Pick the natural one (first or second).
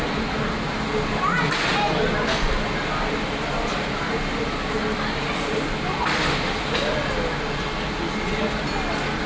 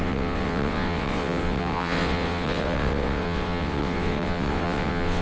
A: first